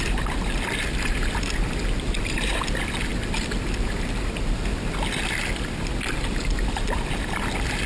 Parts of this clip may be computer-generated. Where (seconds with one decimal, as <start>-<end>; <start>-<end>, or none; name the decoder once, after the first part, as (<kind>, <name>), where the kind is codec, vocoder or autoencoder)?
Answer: none